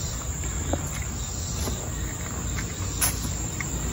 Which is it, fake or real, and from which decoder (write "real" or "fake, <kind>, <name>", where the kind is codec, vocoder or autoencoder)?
real